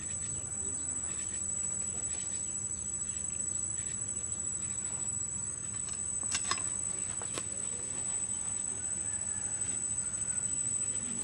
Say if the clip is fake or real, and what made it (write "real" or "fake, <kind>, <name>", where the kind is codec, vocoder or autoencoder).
real